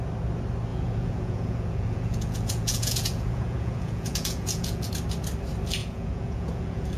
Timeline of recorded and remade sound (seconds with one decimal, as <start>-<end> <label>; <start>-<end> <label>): 0.0-0.7 recorded; 0.7-4.9 remade; 4.9-5.8 recorded; 5.8-7.0 remade